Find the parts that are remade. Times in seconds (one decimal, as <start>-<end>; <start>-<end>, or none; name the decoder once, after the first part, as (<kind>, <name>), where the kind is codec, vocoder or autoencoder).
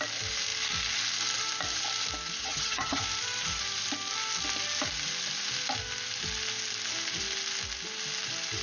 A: 2.4-3.0 (vocoder, HiFi-GAN)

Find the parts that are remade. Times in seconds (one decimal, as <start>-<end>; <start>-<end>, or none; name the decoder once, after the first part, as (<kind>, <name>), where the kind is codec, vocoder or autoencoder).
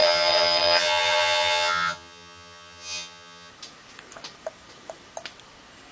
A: 0.0-3.5 (vocoder, HiFi-GAN)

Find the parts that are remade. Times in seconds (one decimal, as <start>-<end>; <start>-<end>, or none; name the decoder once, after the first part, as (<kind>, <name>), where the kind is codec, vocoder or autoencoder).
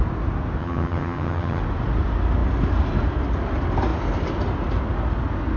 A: 0.6-1.6 (vocoder, HiFi-GAN)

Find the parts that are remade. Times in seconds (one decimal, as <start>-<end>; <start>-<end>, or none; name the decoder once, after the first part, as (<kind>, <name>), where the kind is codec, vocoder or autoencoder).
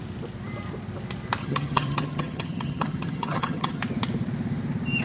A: 1.4-3.8 (vocoder, HiFi-GAN)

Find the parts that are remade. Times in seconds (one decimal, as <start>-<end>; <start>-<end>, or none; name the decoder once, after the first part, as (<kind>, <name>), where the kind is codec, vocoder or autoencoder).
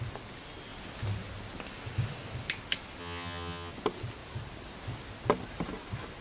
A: 3.0-3.7 (vocoder, HiFi-GAN)